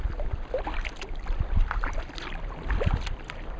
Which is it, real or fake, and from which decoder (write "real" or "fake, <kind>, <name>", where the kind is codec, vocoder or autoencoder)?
real